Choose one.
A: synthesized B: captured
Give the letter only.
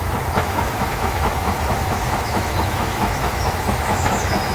A